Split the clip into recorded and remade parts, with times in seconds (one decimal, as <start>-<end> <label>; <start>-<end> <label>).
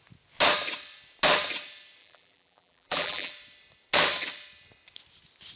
0.0-2.0 recorded; 2.0-3.3 remade; 3.3-5.6 recorded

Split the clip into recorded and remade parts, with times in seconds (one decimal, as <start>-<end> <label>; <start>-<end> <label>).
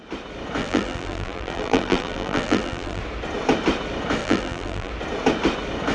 0.0-0.6 recorded; 0.6-3.0 remade; 3.0-4.2 recorded; 4.2-4.9 remade; 4.9-5.9 recorded